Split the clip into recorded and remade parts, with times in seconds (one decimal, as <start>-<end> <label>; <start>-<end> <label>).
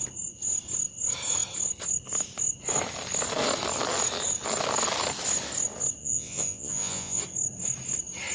0.0-6.0 recorded; 6.0-7.2 remade; 7.2-8.3 recorded